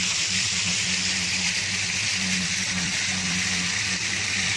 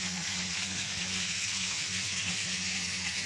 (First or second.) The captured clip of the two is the first